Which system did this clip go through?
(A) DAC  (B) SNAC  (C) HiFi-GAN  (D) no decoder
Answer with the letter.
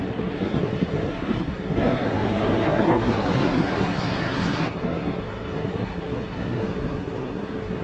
B